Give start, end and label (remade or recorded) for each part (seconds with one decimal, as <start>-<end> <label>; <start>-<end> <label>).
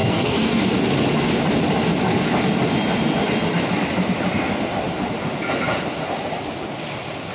0.0-0.6 remade; 0.6-7.3 recorded